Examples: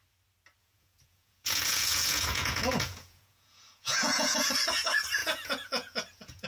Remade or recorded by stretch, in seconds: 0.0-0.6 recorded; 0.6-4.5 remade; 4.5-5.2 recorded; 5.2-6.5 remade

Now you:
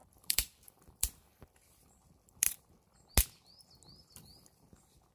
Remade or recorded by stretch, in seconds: 0.0-3.1 remade; 3.1-5.1 recorded

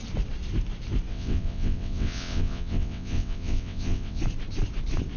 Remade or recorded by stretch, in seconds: 0.0-1.1 recorded; 1.1-4.2 remade; 4.2-5.2 recorded

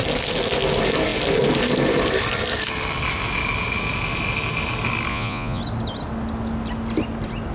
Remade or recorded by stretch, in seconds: 0.0-5.1 recorded; 5.1-5.6 remade; 5.6-7.5 recorded

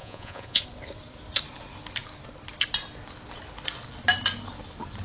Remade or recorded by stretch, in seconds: 0.0-0.6 remade; 0.6-5.0 recorded

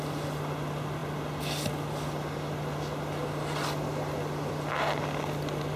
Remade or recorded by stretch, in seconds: 0.0-5.8 recorded

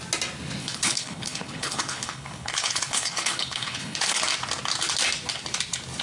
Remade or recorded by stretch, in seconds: 0.0-0.6 recorded; 0.6-4.2 remade; 4.2-6.0 recorded

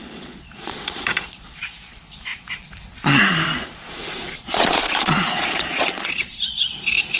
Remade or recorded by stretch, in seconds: 0.0-7.2 remade